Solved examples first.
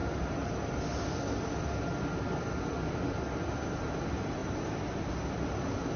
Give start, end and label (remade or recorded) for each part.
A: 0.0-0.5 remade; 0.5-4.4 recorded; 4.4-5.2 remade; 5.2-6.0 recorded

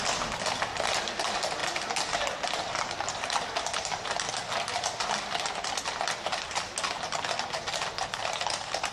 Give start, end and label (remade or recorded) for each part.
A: 0.0-8.2 recorded; 8.2-8.9 remade

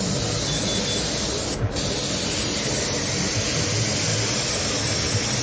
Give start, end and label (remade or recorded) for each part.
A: 0.0-5.4 recorded